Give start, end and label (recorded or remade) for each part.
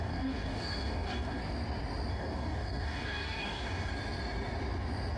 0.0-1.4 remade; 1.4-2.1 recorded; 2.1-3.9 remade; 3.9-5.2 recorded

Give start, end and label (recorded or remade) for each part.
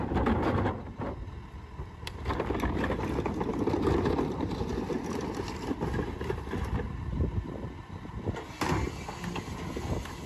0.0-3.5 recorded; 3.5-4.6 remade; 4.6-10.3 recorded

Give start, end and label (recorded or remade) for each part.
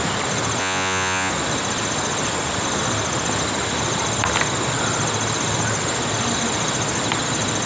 0.0-0.6 recorded; 0.6-1.3 remade; 1.3-7.7 recorded